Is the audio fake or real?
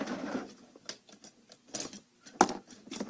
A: real